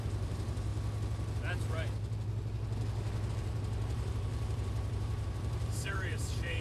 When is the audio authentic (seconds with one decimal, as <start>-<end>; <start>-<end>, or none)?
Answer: 0.7-3.3